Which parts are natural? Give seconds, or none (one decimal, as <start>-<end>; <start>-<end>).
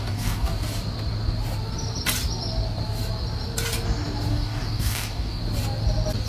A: 0.5-4.3; 5.4-6.3